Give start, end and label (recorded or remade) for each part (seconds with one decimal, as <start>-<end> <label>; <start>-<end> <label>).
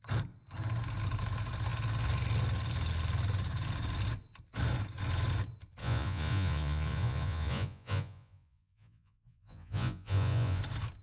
0.0-5.8 recorded; 5.8-10.6 remade; 10.6-11.0 recorded